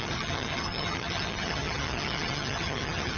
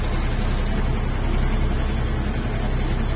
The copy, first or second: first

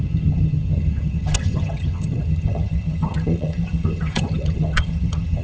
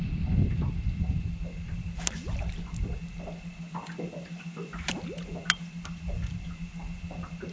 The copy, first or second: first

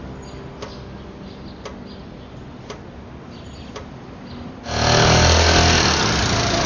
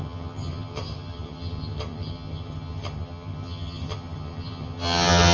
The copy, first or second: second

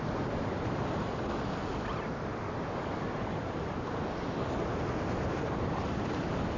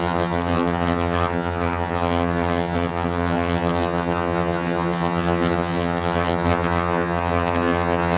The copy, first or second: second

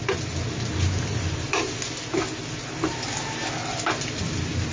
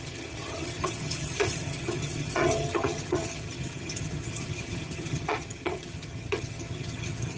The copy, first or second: second